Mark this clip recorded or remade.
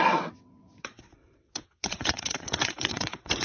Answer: remade